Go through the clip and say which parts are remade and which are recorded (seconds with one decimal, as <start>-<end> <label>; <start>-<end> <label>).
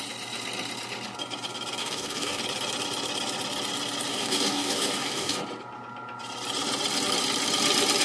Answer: 0.0-1.8 recorded; 1.8-2.4 remade; 2.4-4.1 recorded; 4.1-5.4 remade; 5.4-8.0 recorded